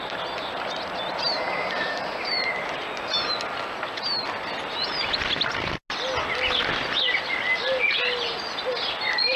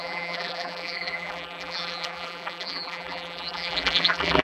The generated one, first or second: second